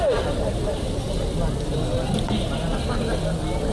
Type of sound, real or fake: real